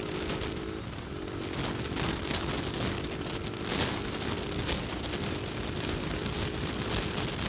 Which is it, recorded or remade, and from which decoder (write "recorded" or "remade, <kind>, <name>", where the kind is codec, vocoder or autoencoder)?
recorded